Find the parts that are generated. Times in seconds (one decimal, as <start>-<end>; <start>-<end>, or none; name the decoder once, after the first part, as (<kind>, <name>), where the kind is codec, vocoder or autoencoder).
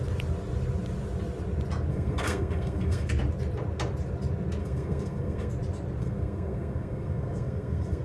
1.9-3.1 (codec, SNAC); 4.6-5.5; 6.0-8.0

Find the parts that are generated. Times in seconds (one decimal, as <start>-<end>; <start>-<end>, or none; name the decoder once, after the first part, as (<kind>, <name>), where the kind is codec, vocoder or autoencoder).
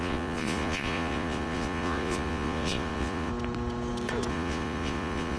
0.0-3.3 (vocoder, Vocos); 4.3-5.4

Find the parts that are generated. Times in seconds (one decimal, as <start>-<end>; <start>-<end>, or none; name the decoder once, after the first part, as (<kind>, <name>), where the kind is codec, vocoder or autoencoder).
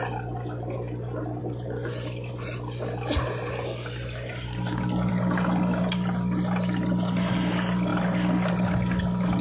none